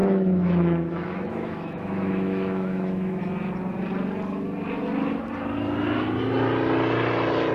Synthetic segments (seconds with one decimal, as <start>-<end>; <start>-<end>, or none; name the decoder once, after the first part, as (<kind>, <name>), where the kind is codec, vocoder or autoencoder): 0.0-3.2 (autoencoder, DAC-VAE)